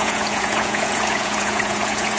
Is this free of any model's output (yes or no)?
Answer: no